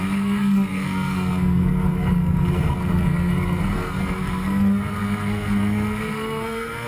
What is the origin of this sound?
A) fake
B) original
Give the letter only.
A